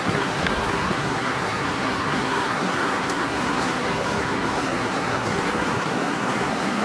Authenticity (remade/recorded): remade